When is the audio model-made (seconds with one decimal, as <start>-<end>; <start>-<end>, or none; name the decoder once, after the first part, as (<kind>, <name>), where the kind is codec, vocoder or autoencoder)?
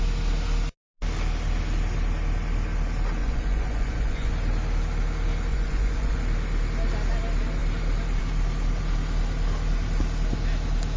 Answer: 3.2-4.3 (vocoder, Vocos); 5.5-6.2